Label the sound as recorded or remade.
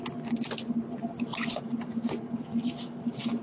recorded